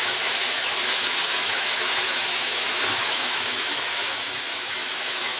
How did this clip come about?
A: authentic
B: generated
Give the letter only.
B